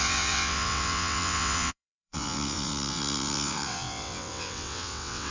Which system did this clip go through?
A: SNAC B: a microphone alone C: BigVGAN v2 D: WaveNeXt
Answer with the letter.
D